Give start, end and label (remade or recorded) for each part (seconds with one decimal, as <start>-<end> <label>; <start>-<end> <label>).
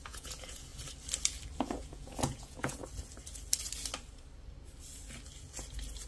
0.0-0.7 remade; 0.7-1.6 recorded; 1.6-2.8 remade; 2.8-6.1 recorded